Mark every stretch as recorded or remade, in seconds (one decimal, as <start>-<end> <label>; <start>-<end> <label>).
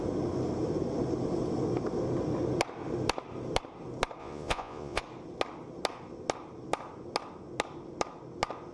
0.0-4.2 recorded; 4.2-5.0 remade; 5.0-8.7 recorded